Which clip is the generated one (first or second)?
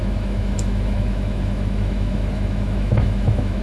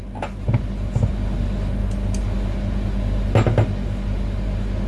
first